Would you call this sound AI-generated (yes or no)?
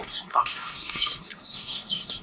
yes